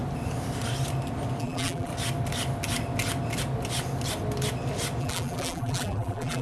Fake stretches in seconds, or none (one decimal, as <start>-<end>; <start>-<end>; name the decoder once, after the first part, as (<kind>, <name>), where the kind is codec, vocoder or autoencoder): 1.4-1.9 (vocoder, BigVGAN v2); 5.0-6.4

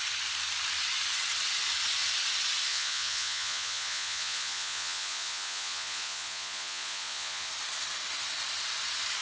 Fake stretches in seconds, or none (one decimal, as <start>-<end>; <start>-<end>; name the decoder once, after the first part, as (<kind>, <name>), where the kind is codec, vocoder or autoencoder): 2.7-7.5 (vocoder, Vocos)

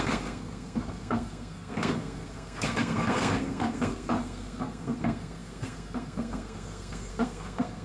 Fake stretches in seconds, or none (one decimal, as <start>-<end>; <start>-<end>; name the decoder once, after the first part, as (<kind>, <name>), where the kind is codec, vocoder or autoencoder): 0.0-7.8 (codec, SNAC)